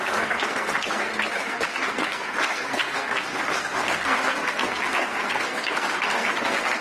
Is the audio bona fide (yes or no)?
no